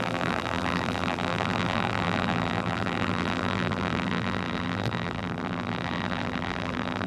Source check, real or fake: fake